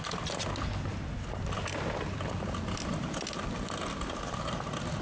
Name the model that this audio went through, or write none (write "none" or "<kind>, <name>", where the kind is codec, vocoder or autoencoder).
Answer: none